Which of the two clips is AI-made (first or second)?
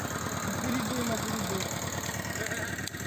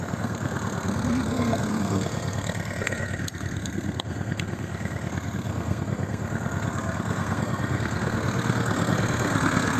second